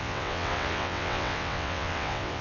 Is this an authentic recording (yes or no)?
no